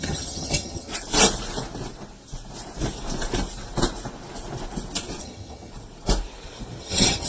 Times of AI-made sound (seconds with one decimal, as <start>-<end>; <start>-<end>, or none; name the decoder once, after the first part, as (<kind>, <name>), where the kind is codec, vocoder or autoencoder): 0.0-0.9 (vocoder, HiFi-GAN); 5.2-5.7; 6.8-7.3